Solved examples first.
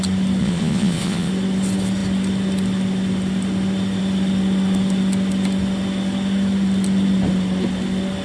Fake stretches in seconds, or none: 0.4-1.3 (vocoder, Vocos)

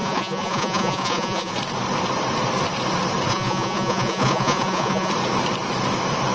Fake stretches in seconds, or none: 0.0-1.5 (vocoder, Vocos); 3.3-5.1

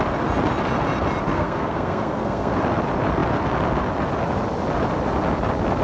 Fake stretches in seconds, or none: 1.3-2.6 (codec, SNAC)

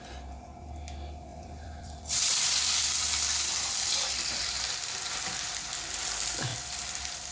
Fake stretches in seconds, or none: 1.3-4.7 (vocoder, BigVGAN v2); 6.5-7.3

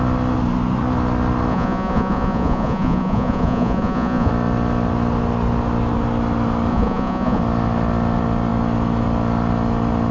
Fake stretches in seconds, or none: 1.5-4.3 (vocoder, Vocos); 6.7-7.4